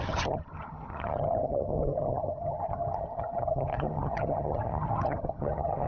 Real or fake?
fake